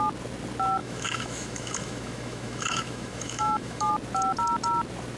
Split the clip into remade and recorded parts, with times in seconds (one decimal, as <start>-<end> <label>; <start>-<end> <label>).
0.0-0.8 recorded; 0.8-3.9 remade; 3.9-5.2 recorded